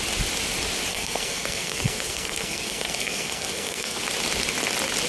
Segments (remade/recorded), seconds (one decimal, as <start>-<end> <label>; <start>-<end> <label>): 0.0-0.9 recorded; 0.9-4.0 remade; 4.0-5.1 recorded